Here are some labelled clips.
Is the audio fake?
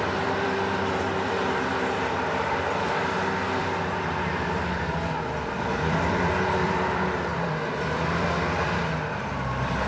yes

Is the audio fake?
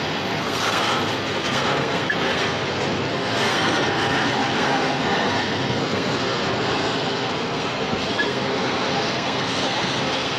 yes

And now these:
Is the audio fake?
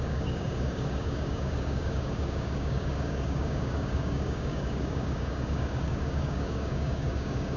yes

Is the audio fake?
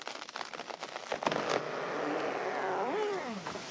no